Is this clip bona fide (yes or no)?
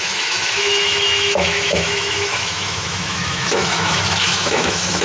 no